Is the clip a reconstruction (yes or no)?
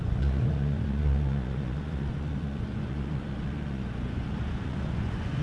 yes